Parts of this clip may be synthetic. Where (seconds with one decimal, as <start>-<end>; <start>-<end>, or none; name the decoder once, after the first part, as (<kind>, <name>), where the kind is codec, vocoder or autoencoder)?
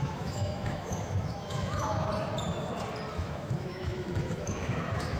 0.0-2.1 (autoencoder, DAC-VAE); 3.1-5.2